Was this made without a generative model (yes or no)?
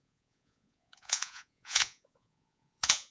no